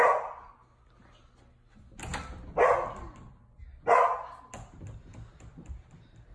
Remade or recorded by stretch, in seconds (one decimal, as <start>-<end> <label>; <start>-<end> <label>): 0.0-6.3 recorded